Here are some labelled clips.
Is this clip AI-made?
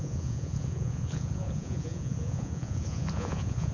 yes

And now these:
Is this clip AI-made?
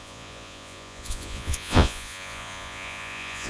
yes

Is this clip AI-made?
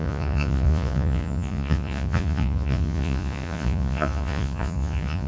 yes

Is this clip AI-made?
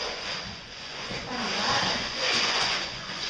yes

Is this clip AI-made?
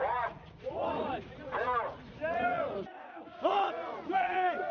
yes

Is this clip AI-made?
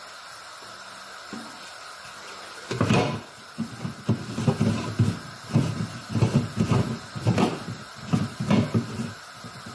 no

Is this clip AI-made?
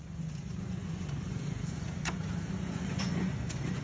yes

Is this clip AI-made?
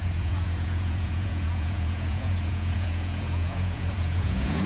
yes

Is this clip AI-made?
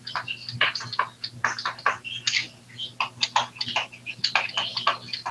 no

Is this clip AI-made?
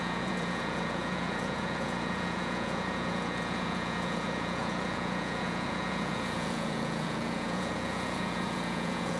yes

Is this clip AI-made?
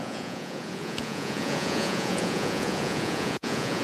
yes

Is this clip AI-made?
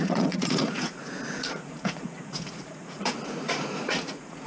yes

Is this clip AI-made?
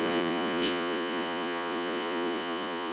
yes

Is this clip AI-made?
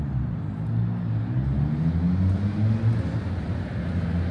no